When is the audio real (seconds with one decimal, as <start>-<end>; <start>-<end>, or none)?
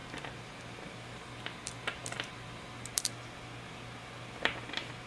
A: 0.0-5.1